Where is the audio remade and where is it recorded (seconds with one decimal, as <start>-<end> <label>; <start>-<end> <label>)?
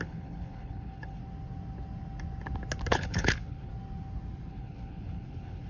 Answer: 0.0-1.2 remade; 1.2-2.9 recorded; 2.9-3.7 remade; 3.7-4.5 recorded; 4.5-5.7 remade